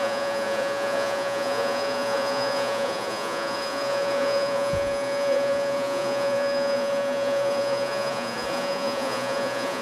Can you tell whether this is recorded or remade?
remade